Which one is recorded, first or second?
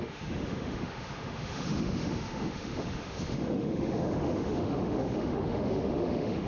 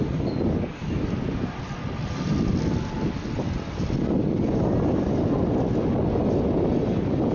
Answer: second